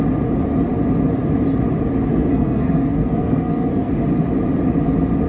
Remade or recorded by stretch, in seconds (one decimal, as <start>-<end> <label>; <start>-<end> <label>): 0.0-2.1 recorded; 2.1-4.0 remade; 4.0-5.3 recorded